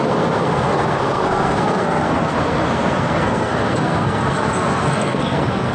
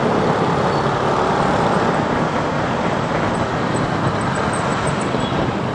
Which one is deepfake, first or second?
first